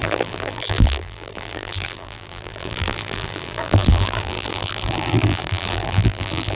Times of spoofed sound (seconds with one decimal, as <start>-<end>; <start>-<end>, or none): 0.0-6.5